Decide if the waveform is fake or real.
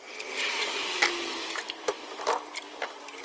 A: real